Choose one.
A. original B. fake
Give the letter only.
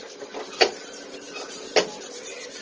A